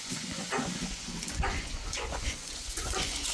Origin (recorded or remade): remade